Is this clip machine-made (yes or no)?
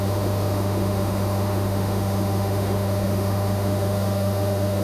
yes